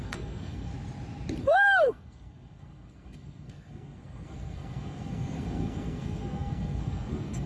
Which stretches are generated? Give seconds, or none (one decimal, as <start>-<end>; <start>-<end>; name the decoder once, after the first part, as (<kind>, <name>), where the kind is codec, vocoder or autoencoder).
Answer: 0.0-0.7 (codec, SNAC); 1.4-7.5